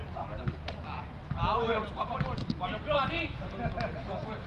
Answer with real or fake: real